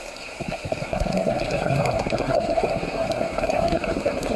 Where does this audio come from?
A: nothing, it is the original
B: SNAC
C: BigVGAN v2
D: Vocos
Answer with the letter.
B